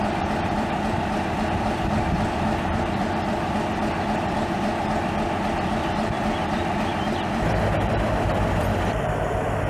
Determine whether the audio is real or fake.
fake